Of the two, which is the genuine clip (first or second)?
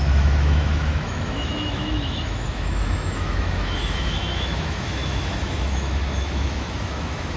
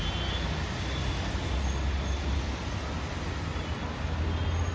second